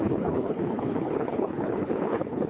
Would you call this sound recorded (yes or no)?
no